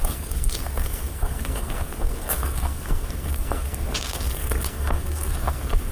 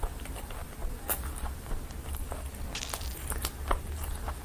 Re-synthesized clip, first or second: first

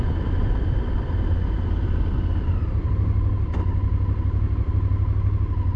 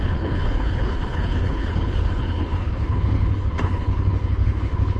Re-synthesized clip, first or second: second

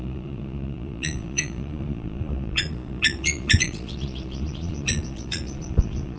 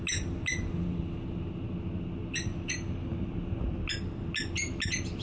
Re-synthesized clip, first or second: first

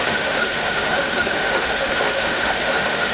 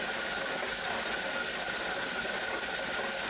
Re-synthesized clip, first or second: first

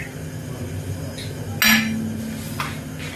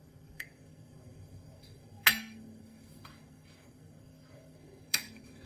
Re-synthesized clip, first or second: second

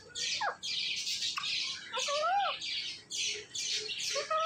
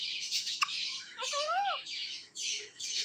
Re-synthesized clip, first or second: second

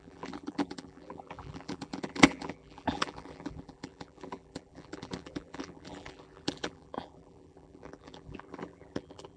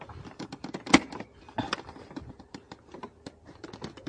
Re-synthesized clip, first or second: first